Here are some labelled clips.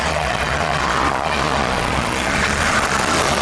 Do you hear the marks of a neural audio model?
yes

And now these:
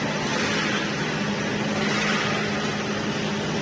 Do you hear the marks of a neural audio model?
no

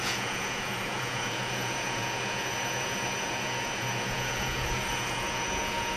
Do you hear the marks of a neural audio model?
yes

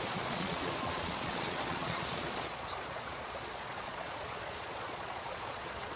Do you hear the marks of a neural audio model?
yes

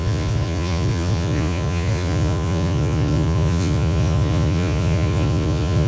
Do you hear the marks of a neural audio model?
yes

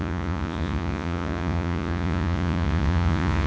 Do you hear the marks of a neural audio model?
yes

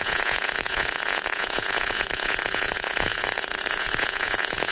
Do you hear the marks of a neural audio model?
yes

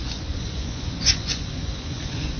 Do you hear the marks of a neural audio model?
yes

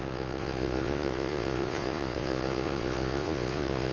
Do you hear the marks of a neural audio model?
yes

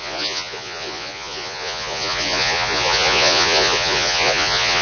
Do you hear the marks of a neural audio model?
yes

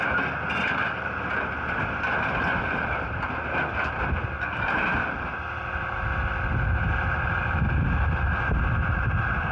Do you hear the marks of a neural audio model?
no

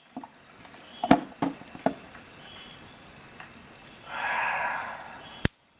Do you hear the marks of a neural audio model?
no